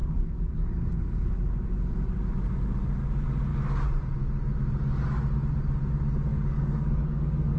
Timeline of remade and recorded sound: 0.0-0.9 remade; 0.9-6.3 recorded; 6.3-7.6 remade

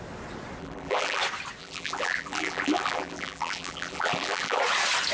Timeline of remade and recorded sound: 0.0-0.6 recorded; 0.6-1.2 remade; 1.2-1.6 recorded; 1.6-4.6 remade; 4.6-5.1 recorded

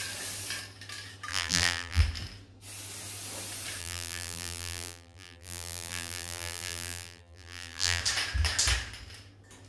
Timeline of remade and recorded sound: 0.0-1.3 recorded; 1.3-2.0 remade; 2.0-3.8 recorded; 3.8-8.0 remade; 8.0-9.7 recorded

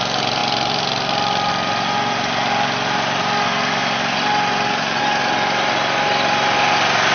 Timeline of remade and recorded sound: 0.0-7.1 recorded

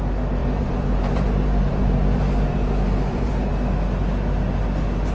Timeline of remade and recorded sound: 0.0-0.4 recorded; 0.4-3.5 remade; 3.5-5.1 recorded

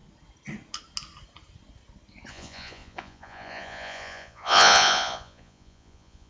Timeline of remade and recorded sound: 0.0-2.3 recorded; 2.3-6.3 remade